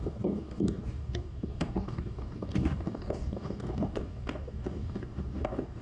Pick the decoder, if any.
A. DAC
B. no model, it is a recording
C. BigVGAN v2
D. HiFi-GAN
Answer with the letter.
A